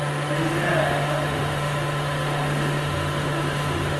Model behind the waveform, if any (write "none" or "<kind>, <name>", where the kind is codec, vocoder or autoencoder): autoencoder, DAC-VAE